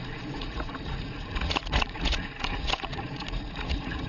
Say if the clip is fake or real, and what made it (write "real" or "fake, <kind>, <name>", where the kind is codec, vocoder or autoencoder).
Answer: fake, vocoder, Vocos